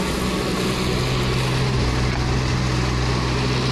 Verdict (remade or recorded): recorded